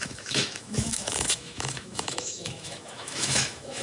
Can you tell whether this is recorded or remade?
remade